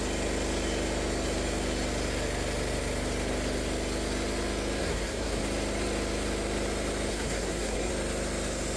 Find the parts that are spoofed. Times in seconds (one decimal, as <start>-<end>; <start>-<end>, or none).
4.8-5.4; 7.1-7.9